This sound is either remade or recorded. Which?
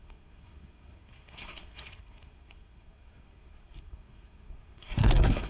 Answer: remade